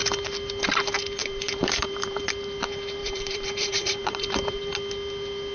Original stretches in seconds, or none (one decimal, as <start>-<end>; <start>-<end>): 0.0-1.2; 2.3-3.0; 4.6-5.5